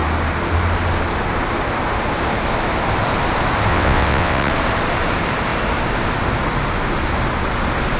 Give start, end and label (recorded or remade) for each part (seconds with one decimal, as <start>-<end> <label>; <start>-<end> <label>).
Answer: 0.0-3.7 recorded; 3.7-4.5 remade; 4.5-8.0 recorded